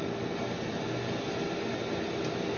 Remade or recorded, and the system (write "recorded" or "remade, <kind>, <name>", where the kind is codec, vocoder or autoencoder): recorded